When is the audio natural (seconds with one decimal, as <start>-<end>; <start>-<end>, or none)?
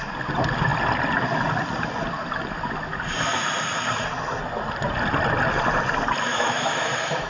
0.0-6.3; 6.8-7.3